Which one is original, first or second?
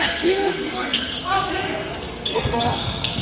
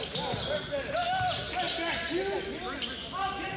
second